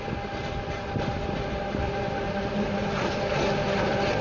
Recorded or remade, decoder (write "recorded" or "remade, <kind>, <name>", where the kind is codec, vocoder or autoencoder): recorded